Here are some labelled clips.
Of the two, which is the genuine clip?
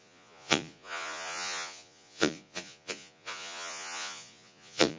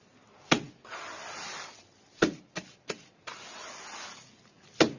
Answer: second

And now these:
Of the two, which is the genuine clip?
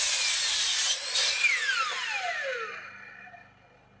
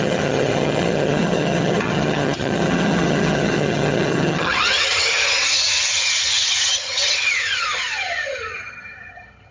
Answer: first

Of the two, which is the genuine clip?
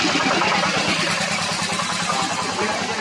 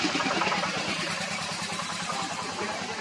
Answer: first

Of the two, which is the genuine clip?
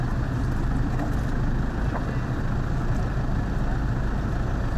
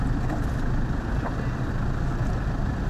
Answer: first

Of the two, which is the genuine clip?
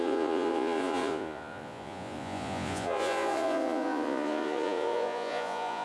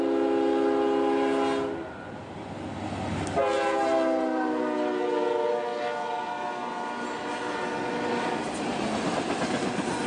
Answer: second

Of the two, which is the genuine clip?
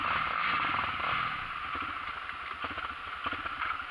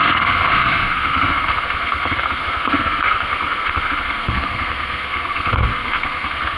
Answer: first